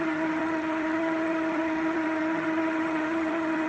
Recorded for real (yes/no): no